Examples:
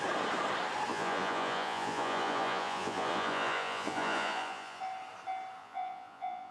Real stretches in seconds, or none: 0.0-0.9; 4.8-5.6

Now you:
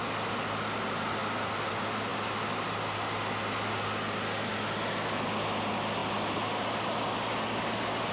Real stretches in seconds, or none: 0.0-8.1

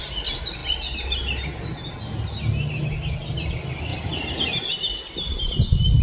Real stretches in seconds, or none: 0.0-6.0

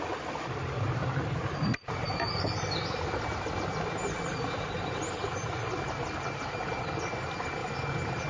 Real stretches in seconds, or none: 0.0-8.3

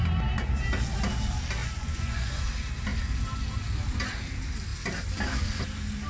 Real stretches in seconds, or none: 0.0-1.6; 2.4-6.1

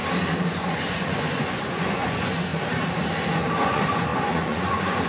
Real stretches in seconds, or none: 0.0-0.5; 2.5-3.4

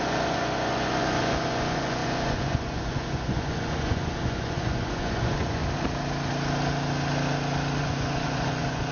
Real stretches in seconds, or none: 5.6-7.8